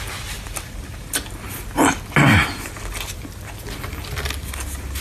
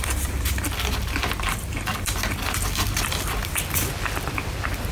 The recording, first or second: first